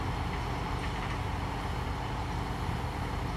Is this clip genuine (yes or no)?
yes